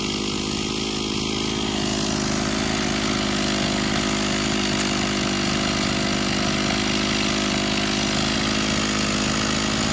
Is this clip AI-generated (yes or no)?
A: no